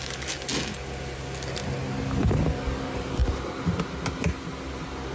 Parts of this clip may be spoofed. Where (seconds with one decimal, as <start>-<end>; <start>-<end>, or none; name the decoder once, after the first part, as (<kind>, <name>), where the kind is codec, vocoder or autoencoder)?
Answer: none